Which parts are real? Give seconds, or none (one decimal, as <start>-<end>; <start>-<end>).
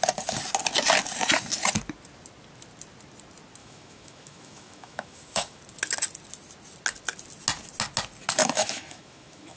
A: 0.0-3.6; 5.6-8.4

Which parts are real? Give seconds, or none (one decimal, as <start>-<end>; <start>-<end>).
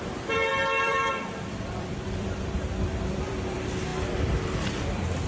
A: none